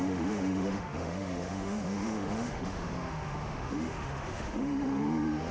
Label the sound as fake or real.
fake